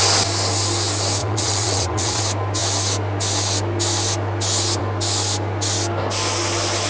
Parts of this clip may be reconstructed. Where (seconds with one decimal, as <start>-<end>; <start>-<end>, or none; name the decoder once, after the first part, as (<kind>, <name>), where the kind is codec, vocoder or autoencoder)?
1.2-2.2 (vocoder, WaveNeXt)